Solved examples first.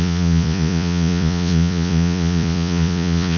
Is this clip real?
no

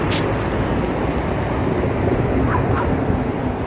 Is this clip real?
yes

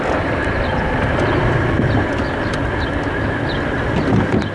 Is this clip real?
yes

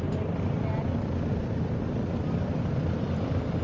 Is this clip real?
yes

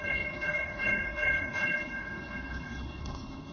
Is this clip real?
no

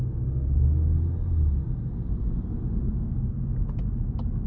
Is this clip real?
yes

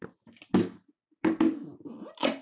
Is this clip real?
yes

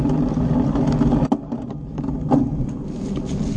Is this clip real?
yes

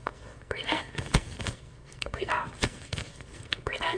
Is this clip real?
no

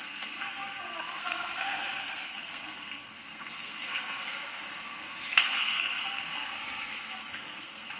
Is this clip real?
no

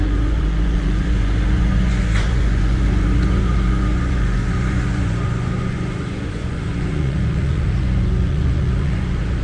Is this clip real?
no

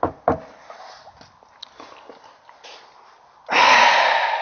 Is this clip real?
yes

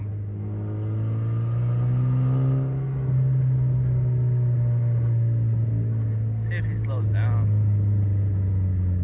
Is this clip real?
yes